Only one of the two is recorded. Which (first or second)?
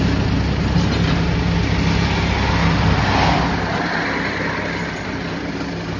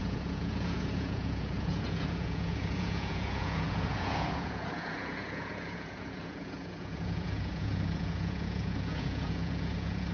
first